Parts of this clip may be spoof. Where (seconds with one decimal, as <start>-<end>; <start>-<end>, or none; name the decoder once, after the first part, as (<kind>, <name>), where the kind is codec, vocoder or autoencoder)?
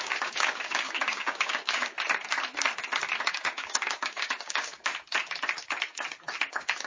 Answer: 0.0-1.9 (codec, DAC); 3.3-4.9; 6.5-6.9